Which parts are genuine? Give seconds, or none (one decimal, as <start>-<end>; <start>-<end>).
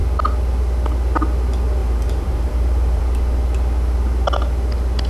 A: 0.0-1.8; 3.0-5.1